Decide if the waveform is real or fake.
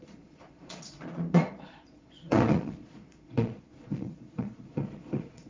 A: fake